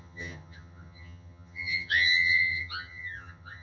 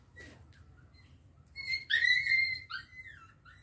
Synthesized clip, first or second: first